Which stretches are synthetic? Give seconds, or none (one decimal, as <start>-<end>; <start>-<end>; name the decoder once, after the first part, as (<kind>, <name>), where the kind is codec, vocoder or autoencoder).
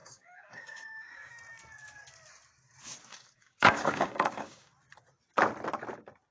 0.0-1.3 (codec, DAC); 3.1-4.7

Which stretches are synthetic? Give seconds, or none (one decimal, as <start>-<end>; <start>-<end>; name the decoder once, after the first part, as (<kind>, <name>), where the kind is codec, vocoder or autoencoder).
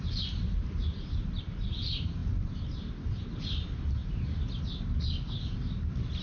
none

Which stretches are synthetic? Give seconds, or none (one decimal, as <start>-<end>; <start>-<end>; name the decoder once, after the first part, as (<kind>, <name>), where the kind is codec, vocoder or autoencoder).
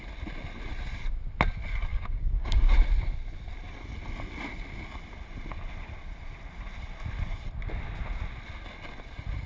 1.9-2.7 (codec, DAC)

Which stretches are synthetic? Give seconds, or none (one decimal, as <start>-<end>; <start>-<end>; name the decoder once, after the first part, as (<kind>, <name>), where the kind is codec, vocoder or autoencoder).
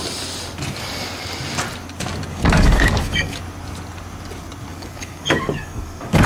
2.3-3.4 (codec, DAC); 4.7-6.3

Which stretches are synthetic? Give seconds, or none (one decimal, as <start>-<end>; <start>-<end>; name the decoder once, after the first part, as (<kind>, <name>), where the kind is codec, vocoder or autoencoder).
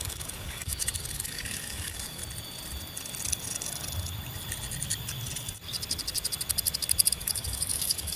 0.0-2.2 (codec, DAC); 7.1-8.2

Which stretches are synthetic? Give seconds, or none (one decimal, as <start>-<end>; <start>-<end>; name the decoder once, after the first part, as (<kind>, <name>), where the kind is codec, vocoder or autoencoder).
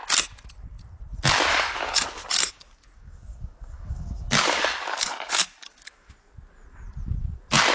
1.5-6.1 (codec, DAC)